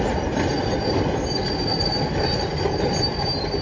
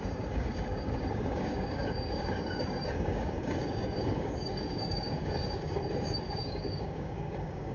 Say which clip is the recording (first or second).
first